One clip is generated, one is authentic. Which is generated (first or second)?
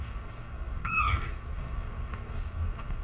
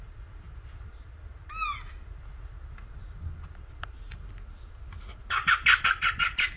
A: first